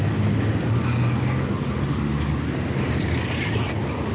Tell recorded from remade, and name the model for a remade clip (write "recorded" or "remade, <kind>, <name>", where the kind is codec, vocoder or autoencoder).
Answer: recorded